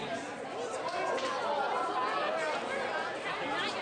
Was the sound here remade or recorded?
recorded